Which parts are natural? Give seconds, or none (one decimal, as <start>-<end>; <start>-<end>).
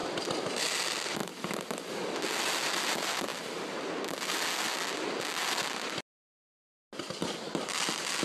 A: 0.0-1.2; 1.9-8.2